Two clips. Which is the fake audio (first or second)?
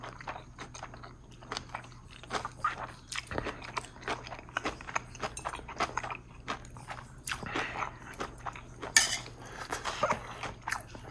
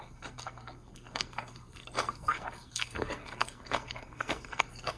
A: second